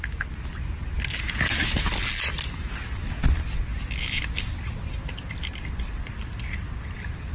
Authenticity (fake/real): real